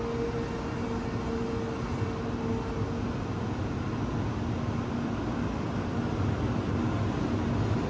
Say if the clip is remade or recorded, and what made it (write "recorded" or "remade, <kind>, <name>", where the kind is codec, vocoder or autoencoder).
recorded